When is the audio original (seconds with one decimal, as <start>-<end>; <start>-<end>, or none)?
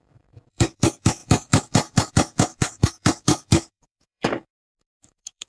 none